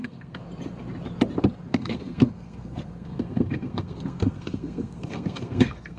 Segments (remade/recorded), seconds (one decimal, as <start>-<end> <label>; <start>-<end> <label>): 0.0-0.4 remade; 0.4-1.7 recorded; 1.7-6.0 remade